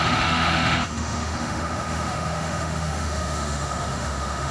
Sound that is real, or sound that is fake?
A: fake